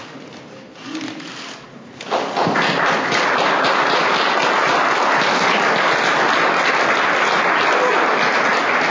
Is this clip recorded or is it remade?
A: recorded